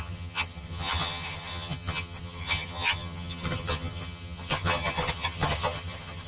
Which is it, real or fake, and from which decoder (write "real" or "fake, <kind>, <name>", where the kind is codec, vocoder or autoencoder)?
fake, vocoder, HiFi-GAN